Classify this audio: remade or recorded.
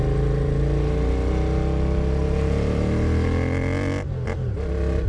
recorded